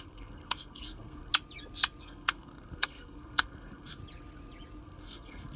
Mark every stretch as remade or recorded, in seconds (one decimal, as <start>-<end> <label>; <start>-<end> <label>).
0.0-1.3 remade; 1.3-2.0 recorded; 2.0-4.0 remade; 4.0-4.8 recorded; 4.8-5.6 remade